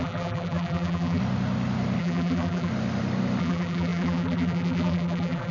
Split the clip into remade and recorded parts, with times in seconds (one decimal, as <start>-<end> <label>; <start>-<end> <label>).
0.0-1.2 remade; 1.2-2.0 recorded; 2.0-2.7 remade; 2.7-3.4 recorded; 3.4-5.5 remade